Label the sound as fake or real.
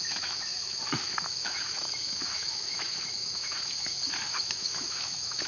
fake